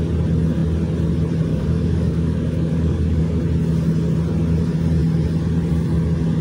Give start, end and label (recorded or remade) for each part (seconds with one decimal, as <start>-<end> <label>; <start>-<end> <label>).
0.0-1.5 recorded; 1.5-3.4 remade; 3.4-6.4 recorded